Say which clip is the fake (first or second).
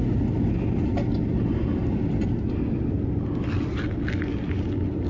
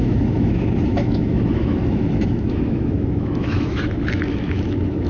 second